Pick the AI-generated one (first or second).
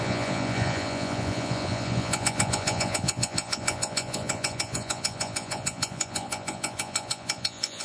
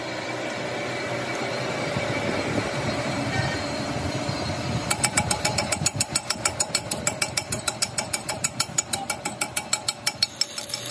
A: first